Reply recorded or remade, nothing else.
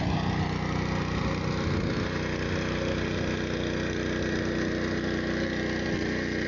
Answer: recorded